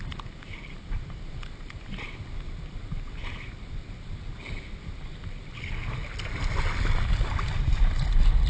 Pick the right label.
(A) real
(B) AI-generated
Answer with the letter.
A